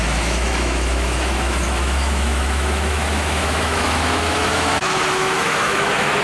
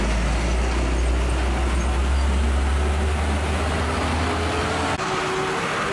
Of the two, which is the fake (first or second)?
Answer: first